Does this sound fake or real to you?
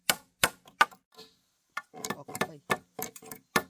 fake